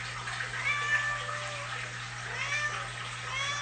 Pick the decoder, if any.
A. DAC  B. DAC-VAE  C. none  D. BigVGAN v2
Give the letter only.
C